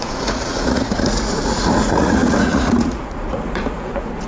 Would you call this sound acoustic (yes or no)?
no